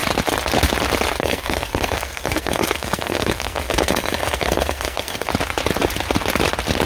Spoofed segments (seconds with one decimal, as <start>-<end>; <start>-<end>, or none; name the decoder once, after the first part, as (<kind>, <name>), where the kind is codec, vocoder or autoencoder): 1.2-5.3 (codec, SNAC)